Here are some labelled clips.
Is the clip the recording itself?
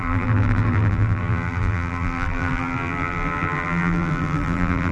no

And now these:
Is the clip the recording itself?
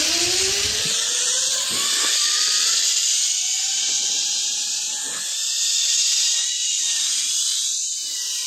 yes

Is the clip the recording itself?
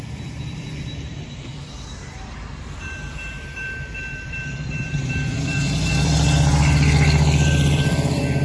no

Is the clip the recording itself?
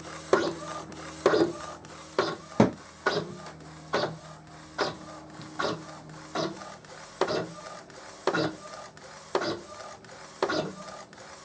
yes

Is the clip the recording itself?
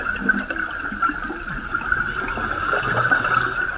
yes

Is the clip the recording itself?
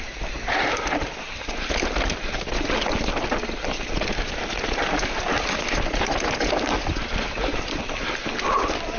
yes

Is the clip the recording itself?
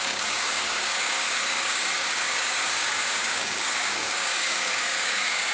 no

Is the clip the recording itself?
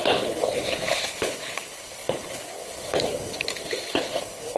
no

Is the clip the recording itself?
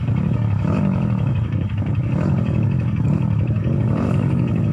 no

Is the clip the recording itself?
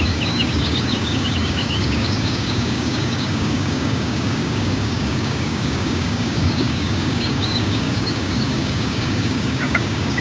no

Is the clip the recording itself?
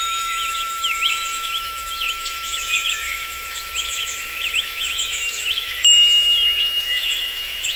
no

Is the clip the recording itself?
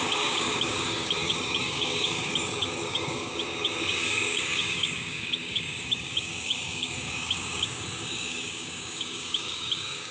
no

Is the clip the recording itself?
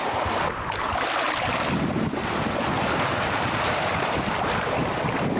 yes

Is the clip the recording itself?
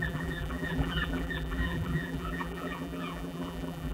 no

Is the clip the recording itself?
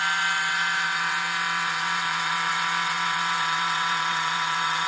no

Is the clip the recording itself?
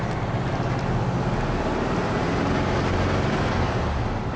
yes